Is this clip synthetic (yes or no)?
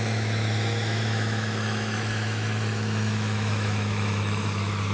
yes